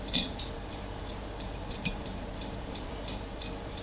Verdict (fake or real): fake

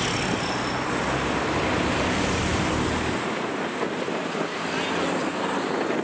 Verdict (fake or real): real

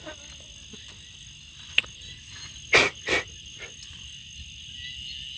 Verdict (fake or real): real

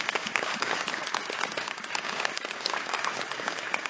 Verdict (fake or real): fake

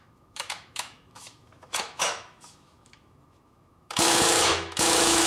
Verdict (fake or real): fake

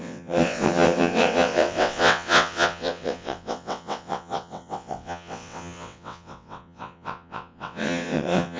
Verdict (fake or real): fake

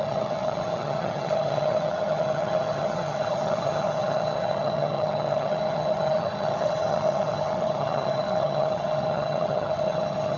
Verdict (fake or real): fake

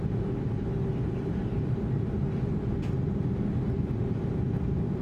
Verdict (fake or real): real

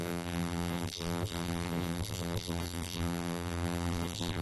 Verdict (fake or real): fake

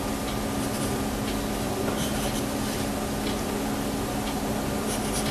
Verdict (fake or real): real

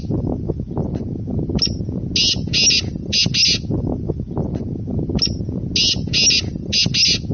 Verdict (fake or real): real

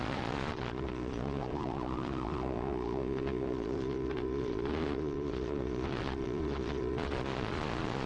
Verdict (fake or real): fake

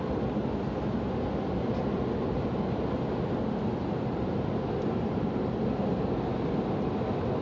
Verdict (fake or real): real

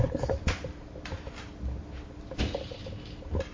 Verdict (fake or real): fake